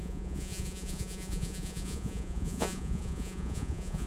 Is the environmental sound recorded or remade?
remade